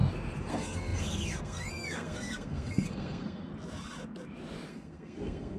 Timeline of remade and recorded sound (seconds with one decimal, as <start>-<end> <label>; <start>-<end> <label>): 0.0-0.5 recorded; 0.5-3.5 remade; 3.5-4.7 recorded; 4.7-5.6 remade